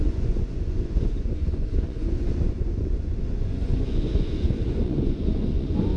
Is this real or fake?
fake